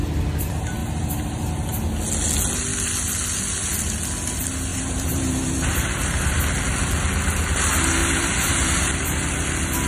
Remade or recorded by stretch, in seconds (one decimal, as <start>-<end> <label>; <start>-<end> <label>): 0.0-0.8 recorded; 0.8-1.5 remade; 1.5-4.7 recorded; 4.7-6.4 remade; 6.4-8.0 recorded; 8.0-8.8 remade; 8.8-9.9 recorded